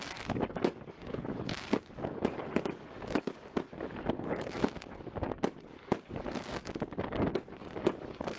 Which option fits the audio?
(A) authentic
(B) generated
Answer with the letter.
B